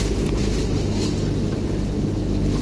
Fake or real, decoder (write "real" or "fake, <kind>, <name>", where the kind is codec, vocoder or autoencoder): real